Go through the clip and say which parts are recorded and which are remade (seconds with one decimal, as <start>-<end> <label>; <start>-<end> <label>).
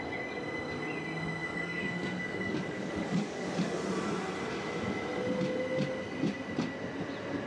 0.0-1.4 recorded; 1.4-3.5 remade; 3.5-7.5 recorded